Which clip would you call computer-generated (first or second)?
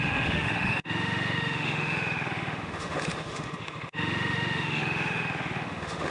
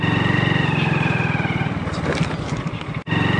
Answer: first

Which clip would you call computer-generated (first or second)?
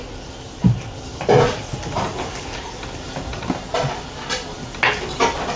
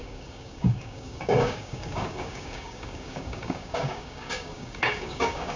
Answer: second